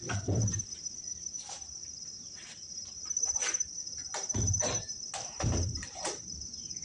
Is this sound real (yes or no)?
no